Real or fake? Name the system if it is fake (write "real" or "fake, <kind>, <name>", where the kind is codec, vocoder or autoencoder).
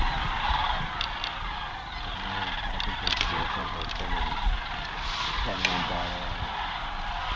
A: real